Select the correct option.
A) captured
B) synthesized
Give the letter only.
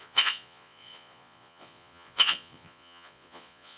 B